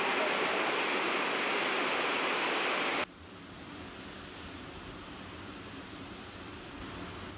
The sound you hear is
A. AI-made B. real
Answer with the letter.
B